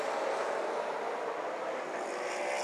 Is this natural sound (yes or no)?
yes